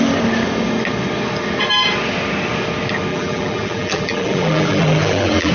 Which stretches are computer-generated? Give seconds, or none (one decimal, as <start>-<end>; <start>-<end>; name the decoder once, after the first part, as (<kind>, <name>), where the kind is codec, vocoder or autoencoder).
3.1-5.5 (vocoder, BigVGAN v2)